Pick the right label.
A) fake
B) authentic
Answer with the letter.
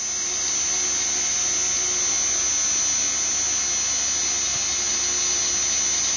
B